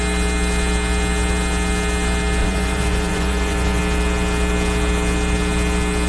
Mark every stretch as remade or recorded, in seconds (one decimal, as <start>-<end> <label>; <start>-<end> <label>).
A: 0.0-2.4 recorded; 2.4-3.8 remade; 3.8-6.1 recorded